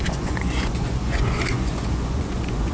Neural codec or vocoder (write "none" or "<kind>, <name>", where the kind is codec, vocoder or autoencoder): vocoder, Vocos